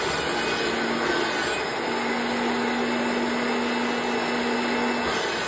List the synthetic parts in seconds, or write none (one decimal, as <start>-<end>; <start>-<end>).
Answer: none